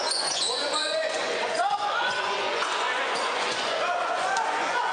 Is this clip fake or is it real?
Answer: fake